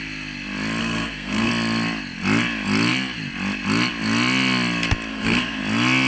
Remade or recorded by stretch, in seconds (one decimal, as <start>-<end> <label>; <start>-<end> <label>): 0.0-0.8 recorded; 0.8-1.5 remade; 1.5-5.1 recorded; 5.1-5.6 remade; 5.6-6.1 recorded